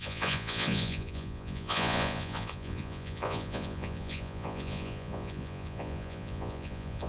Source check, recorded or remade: remade